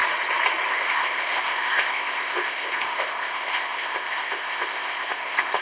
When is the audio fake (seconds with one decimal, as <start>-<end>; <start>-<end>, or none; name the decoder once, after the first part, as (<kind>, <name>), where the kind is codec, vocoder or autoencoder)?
0.7-5.6 (codec, ZipCodec)